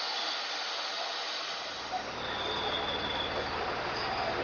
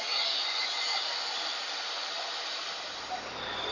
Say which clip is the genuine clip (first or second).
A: first